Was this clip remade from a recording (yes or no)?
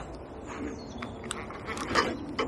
no